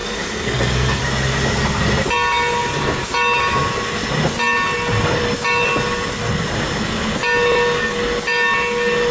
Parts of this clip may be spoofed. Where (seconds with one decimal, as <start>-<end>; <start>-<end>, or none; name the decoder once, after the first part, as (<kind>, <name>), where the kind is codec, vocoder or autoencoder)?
0.0-1.0 (codec, SNAC)

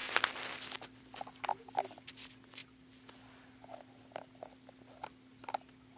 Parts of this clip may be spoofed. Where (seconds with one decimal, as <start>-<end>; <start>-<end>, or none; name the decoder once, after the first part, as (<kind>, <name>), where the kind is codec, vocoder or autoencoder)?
1.5-2.1 (vocoder, BigVGAN v2); 2.6-3.8